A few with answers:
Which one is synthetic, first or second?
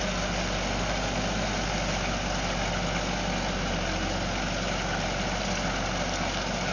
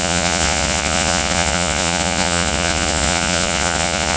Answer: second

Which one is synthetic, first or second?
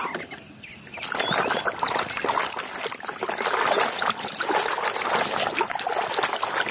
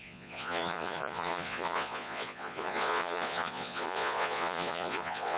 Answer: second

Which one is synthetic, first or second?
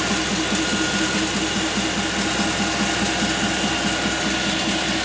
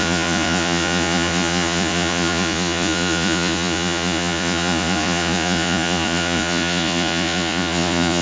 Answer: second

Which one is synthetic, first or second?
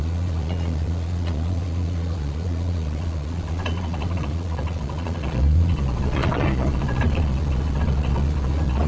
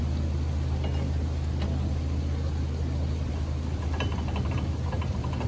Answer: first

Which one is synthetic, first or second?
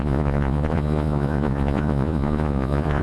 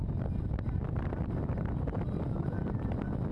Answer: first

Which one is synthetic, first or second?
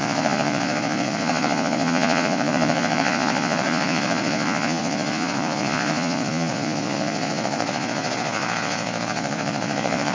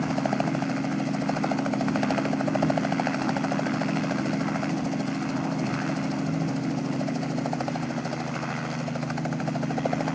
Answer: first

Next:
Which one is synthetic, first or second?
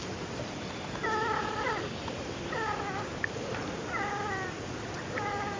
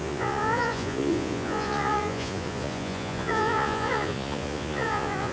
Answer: second